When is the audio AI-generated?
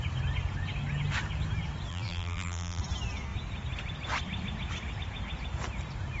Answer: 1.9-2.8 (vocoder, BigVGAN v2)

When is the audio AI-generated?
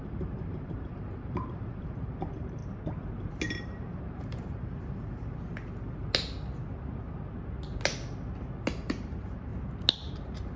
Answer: 0.0-2.6 (vocoder, BigVGAN v2); 3.3-5.5; 8.7-9.5; 10.1-10.6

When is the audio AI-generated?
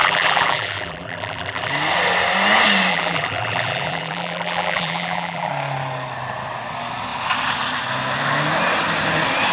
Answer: 0.0-1.7 (vocoder, BigVGAN v2); 2.9-5.5